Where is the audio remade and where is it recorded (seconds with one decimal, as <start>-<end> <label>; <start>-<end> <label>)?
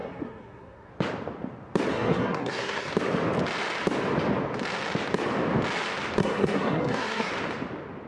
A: 0.0-0.9 remade; 0.9-1.9 recorded; 1.9-2.9 remade; 2.9-6.2 recorded; 6.2-7.3 remade; 7.3-8.1 recorded